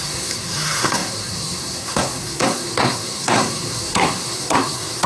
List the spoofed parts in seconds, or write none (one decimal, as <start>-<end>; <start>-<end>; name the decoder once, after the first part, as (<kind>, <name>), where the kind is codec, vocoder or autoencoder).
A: 0.0-5.1 (codec, SNAC)